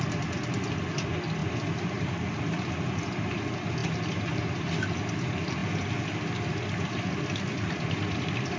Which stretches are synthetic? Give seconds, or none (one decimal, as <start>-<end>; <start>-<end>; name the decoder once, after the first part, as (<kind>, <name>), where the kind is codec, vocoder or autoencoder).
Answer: none